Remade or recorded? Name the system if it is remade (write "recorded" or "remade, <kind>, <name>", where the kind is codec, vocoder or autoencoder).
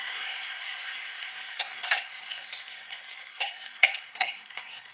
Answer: remade, codec, SNAC